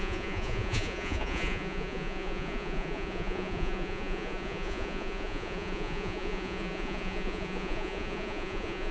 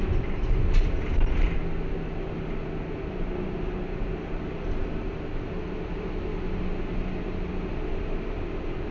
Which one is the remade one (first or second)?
first